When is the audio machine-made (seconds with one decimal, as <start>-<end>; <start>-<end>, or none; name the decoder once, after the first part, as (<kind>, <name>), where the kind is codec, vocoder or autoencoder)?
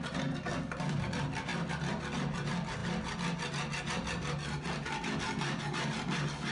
none